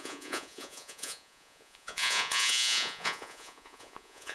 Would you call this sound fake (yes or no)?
yes